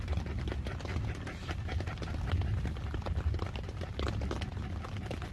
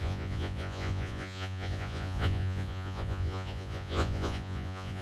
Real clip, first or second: first